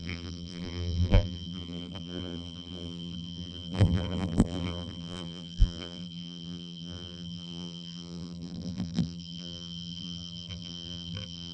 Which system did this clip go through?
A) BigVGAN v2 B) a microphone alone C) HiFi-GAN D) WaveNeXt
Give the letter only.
A